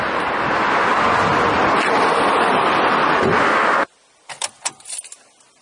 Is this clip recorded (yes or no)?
yes